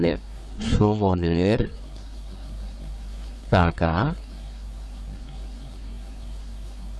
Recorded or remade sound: remade